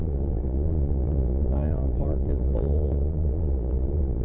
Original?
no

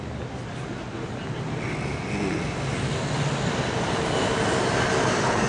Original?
yes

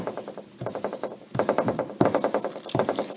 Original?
yes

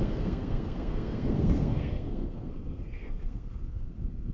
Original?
no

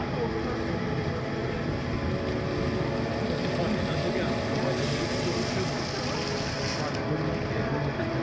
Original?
yes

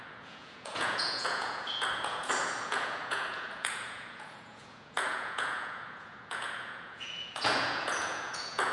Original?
no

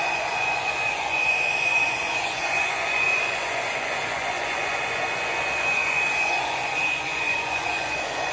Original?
no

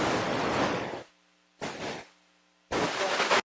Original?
yes